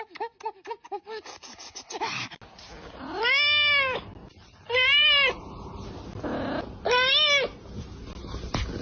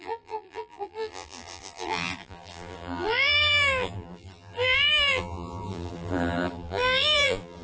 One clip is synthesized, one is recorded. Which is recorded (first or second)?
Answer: first